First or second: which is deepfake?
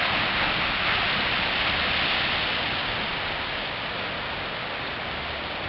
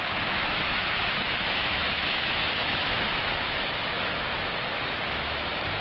second